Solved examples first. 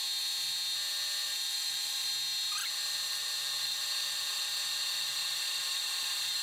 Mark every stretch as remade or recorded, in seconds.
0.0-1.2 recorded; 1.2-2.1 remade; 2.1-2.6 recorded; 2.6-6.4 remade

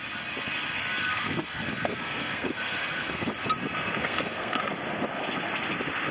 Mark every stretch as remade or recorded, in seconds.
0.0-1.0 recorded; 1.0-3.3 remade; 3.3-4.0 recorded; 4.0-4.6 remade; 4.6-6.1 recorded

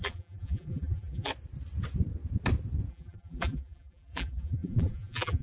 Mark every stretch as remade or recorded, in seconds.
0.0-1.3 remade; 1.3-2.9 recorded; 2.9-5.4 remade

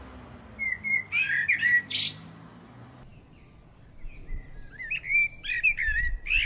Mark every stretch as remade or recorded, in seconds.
0.0-6.5 recorded

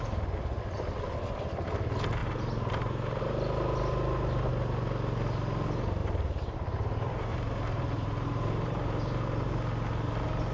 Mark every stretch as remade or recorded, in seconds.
0.0-2.2 recorded; 2.2-3.2 remade; 3.2-6.0 recorded; 6.0-9.5 remade; 9.5-10.5 recorded